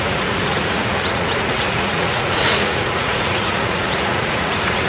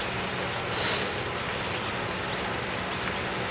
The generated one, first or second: first